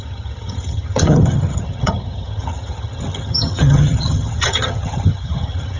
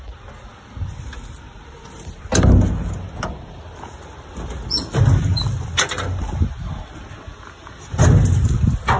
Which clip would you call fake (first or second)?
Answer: first